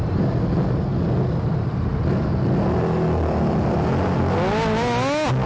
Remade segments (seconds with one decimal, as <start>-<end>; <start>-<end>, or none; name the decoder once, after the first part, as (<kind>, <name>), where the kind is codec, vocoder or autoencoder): none